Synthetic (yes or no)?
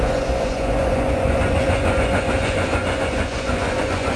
yes